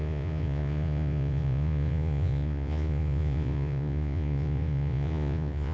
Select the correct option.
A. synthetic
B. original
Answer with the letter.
A